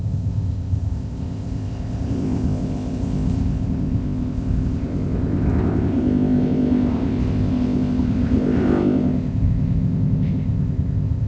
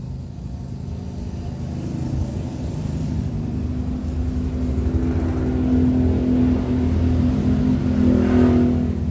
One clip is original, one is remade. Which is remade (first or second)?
first